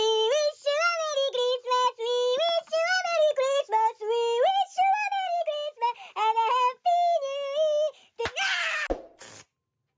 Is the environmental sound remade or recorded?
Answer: recorded